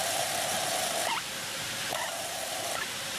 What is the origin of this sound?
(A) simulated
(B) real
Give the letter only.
A